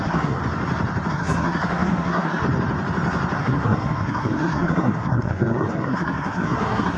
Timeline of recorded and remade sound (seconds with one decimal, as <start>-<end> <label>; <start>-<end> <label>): 0.0-0.4 remade; 0.4-1.1 recorded; 1.1-2.4 remade; 2.4-3.4 recorded; 3.4-7.0 remade